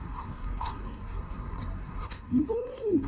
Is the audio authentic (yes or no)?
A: no